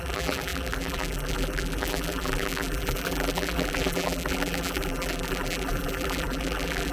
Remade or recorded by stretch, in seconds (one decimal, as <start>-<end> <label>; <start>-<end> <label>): 0.0-6.9 remade